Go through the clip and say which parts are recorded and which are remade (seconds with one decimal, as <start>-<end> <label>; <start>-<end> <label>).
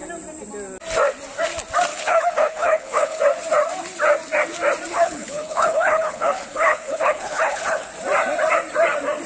0.0-1.9 recorded; 1.9-3.2 remade; 3.2-4.9 recorded; 4.9-7.9 remade; 7.9-9.3 recorded